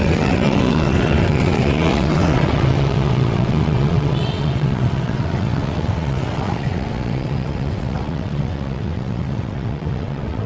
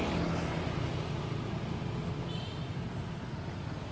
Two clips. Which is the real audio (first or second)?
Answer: second